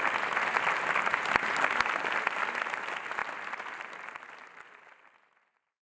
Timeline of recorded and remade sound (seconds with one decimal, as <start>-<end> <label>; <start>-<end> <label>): 0.0-5.9 recorded